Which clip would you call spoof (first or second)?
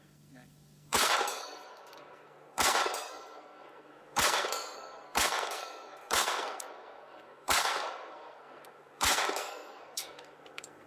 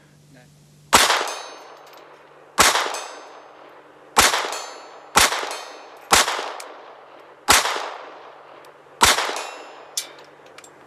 first